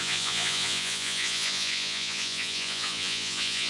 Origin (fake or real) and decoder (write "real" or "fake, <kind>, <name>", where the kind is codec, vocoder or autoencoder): fake, vocoder, Vocos